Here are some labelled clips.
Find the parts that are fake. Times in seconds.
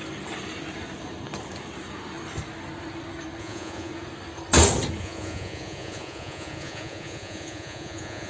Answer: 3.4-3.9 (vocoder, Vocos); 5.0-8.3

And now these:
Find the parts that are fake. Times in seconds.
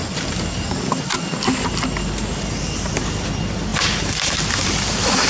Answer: 0.0-2.9 (vocoder, BigVGAN v2); 3.7-4.3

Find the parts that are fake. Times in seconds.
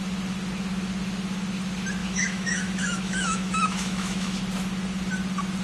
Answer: 2.0-4.4 (autoencoder, DAC-VAE)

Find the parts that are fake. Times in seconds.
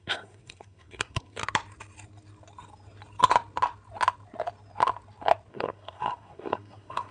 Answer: 0.0-1.4 (codec, SNAC); 5.5-7.1